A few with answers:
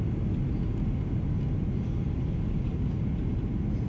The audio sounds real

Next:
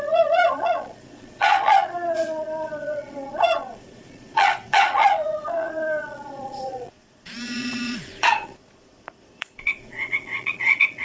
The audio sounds fake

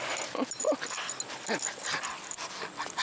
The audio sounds real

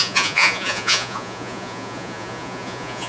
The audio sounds fake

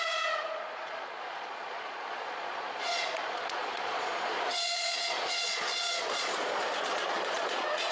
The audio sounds fake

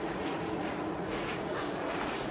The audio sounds fake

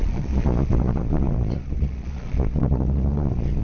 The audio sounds fake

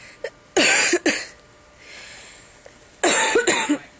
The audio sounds real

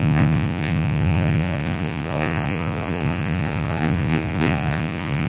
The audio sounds fake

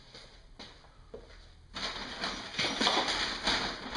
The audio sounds real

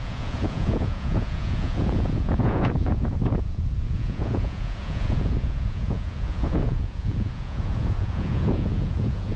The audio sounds fake